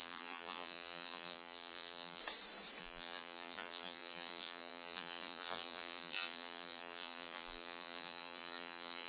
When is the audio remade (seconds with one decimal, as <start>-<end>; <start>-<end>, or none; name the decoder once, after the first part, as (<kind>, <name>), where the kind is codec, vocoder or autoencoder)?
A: 0.0-2.2 (vocoder, BigVGAN v2); 2.8-9.1